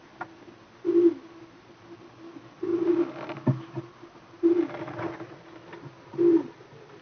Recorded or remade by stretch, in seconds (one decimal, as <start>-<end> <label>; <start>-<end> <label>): 0.0-7.0 recorded